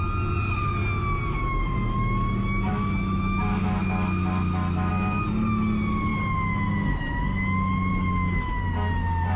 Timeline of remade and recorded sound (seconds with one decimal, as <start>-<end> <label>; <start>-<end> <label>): 0.0-1.4 recorded; 1.4-4.9 remade; 4.9-9.4 recorded